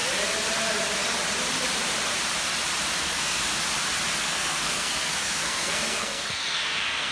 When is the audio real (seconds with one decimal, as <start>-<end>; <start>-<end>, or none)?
0.0-3.0; 3.4-4.2